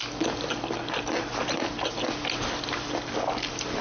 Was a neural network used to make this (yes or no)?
no